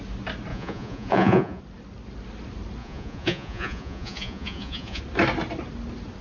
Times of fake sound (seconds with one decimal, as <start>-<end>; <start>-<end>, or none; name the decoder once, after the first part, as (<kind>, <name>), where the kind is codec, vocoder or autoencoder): 0.5-1.6 (vocoder, Vocos); 2.8-5.0